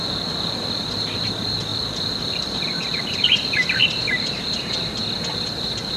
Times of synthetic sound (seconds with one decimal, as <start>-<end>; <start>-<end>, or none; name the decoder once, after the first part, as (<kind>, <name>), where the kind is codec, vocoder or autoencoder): 0.0-3.8 (vocoder, BigVGAN v2); 5.2-6.0